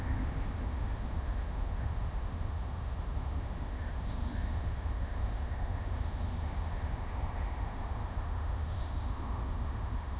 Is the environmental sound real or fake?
fake